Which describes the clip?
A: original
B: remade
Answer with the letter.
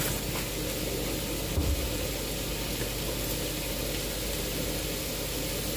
A